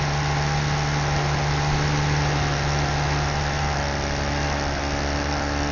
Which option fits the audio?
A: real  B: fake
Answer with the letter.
A